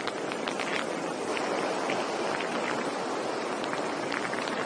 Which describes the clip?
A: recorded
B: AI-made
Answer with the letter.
A